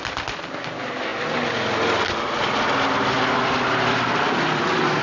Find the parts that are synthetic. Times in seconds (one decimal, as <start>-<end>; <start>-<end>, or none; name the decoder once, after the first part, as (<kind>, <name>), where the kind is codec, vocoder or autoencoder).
none